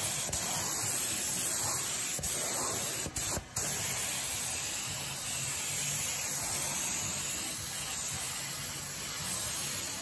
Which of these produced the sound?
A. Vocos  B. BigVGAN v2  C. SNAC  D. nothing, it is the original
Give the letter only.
D